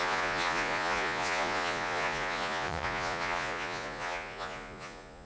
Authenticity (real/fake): fake